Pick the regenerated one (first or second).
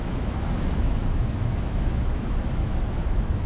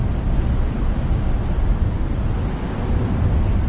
first